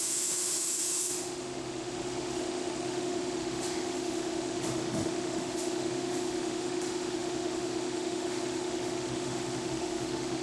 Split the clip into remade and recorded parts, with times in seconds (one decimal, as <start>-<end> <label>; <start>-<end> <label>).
0.0-10.4 remade

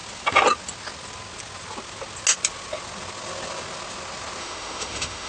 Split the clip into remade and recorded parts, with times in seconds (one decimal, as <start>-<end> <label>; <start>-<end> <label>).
0.0-4.4 recorded; 4.4-5.3 remade

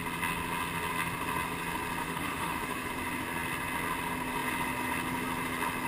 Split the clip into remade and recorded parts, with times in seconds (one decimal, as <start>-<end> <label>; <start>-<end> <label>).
0.0-2.0 recorded; 2.0-2.9 remade; 2.9-5.9 recorded

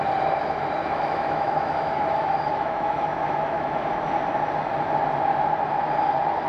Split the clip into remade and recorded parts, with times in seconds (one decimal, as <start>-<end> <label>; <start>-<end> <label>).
0.0-0.8 recorded; 0.8-3.9 remade; 3.9-6.5 recorded

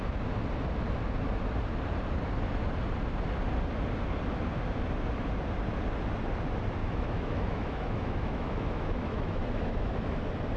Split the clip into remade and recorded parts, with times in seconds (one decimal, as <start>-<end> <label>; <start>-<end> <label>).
0.0-6.8 recorded; 6.8-10.2 remade; 10.2-10.6 recorded

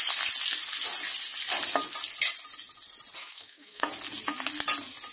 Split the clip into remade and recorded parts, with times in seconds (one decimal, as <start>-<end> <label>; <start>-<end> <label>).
0.0-3.2 recorded; 3.2-3.9 remade; 3.9-5.1 recorded

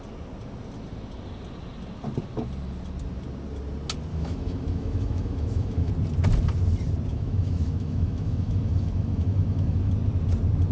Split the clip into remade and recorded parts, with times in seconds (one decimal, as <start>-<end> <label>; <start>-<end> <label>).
0.0-4.1 recorded; 4.1-5.9 remade; 5.9-7.1 recorded; 7.1-9.9 remade; 9.9-10.7 recorded

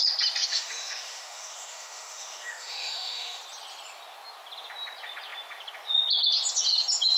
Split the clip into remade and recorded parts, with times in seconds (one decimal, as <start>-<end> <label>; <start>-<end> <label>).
0.0-0.5 recorded; 0.5-3.4 remade; 3.4-7.2 recorded